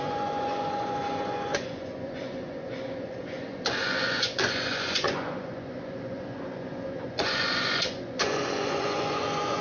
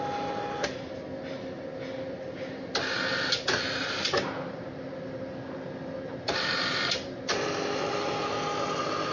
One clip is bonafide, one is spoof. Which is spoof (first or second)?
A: first